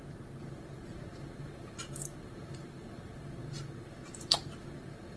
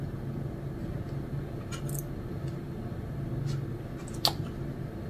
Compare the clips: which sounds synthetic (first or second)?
first